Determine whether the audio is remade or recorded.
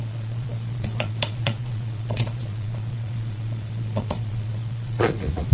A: remade